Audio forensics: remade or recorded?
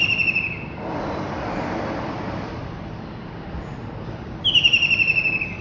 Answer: recorded